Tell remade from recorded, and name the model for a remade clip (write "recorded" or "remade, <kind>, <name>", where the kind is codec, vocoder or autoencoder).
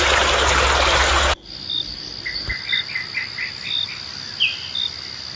recorded